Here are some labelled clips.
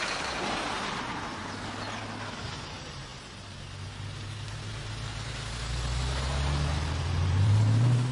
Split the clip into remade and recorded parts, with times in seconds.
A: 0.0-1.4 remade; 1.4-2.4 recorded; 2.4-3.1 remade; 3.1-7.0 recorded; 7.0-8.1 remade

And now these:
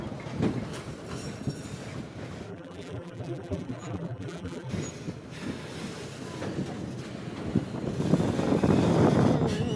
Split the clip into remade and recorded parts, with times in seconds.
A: 0.0-2.5 recorded; 2.5-4.7 remade; 4.7-9.8 recorded